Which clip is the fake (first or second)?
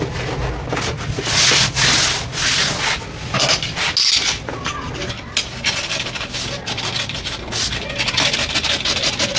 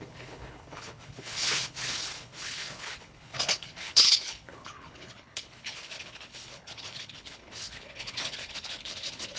second